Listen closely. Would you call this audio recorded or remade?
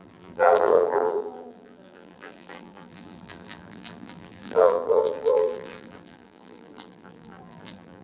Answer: remade